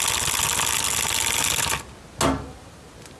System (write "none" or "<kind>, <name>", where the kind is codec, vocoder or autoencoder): none